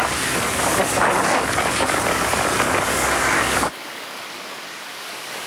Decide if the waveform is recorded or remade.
remade